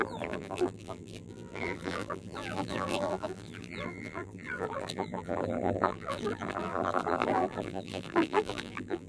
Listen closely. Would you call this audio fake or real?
fake